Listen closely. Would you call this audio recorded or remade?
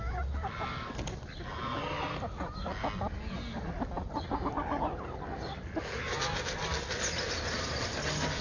recorded